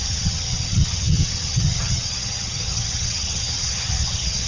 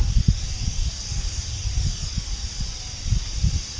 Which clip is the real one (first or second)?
second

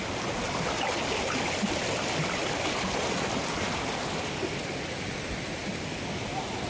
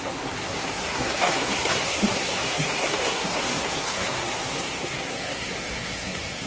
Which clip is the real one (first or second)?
first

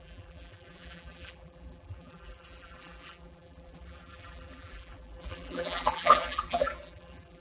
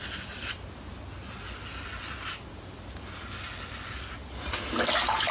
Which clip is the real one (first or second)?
second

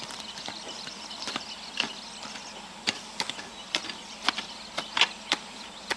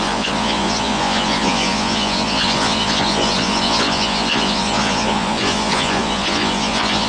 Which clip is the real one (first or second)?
first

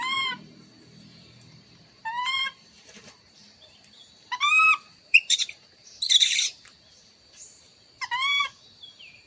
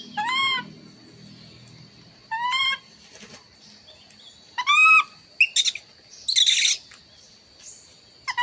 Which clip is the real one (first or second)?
second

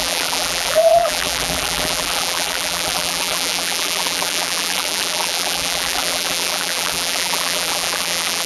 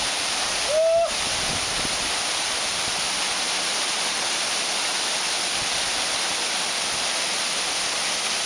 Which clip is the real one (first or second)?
second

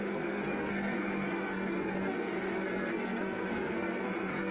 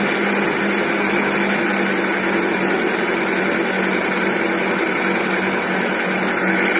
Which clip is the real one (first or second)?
second